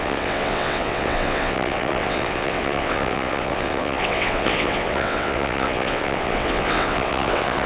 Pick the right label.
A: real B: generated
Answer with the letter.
B